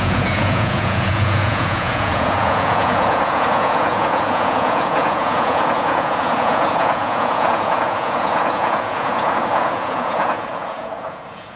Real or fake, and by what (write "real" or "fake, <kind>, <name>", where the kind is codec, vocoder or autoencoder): fake, vocoder, Vocos